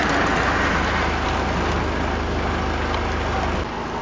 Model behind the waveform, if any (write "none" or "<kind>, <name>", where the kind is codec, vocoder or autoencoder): none